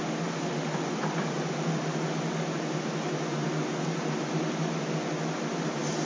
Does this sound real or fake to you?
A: real